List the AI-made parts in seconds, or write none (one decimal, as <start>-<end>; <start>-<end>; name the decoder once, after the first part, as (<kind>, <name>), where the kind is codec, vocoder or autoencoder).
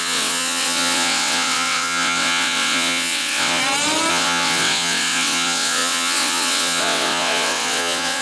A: 0.0-3.6 (vocoder, WaveNeXt); 4.1-8.2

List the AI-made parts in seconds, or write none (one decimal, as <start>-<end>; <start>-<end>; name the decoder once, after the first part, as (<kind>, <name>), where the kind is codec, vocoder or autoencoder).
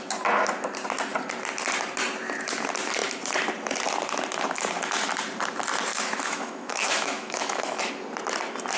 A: 5.9-7.9 (autoencoder, DAC-VAE)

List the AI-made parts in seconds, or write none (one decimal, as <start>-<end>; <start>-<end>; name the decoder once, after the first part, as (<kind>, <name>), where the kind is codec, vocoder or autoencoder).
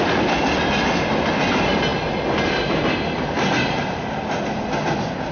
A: none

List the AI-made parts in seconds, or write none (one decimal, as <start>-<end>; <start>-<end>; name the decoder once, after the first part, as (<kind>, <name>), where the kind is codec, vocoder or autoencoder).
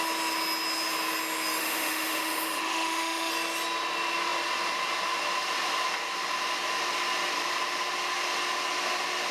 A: 1.6-3.3 (autoencoder, DAC-VAE)